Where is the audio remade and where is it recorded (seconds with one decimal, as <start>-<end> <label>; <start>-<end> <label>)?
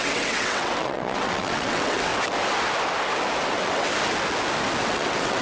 0.0-2.1 remade; 2.1-3.5 recorded; 3.5-3.9 remade; 3.9-4.8 recorded; 4.8-5.4 remade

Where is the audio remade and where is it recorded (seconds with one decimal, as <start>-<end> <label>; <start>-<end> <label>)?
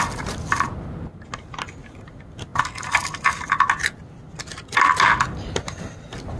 0.0-6.4 recorded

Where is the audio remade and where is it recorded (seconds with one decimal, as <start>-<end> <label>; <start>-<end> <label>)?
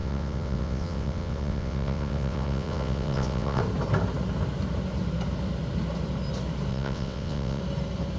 0.0-3.6 remade; 3.6-6.7 recorded; 6.7-7.6 remade; 7.6-8.2 recorded